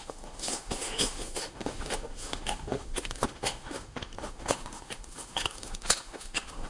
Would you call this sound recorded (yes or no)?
no